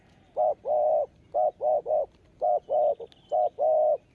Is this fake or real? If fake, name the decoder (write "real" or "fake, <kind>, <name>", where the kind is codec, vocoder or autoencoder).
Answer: real